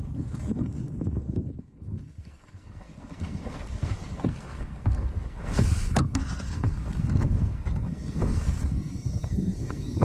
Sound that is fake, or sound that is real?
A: fake